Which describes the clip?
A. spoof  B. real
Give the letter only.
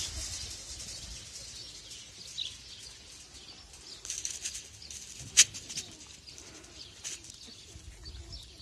B